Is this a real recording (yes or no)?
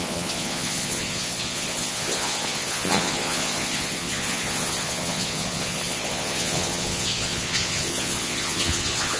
no